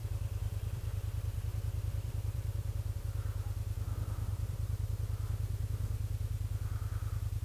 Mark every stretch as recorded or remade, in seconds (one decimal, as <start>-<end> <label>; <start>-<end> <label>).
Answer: 0.0-3.0 remade; 3.0-4.3 recorded; 4.3-4.9 remade; 4.9-7.4 recorded